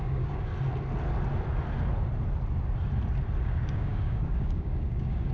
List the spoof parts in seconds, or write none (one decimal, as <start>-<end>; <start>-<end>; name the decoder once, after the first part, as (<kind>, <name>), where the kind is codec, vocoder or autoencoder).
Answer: 0.0-0.5 (codec, DAC); 3.4-5.3